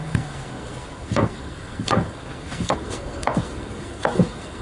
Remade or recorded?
remade